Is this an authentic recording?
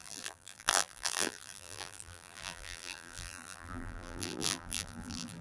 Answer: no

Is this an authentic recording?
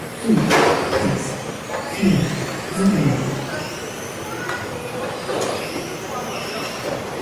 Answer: no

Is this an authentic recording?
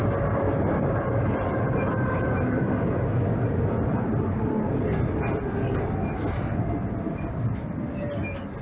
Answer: yes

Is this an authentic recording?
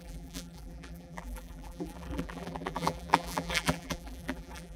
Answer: no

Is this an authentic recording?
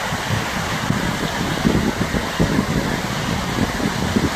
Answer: yes